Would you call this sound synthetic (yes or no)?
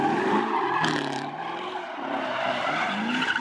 yes